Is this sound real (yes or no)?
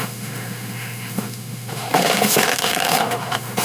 no